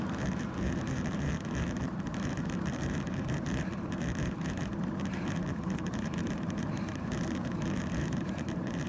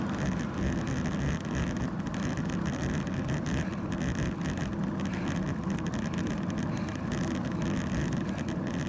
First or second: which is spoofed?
first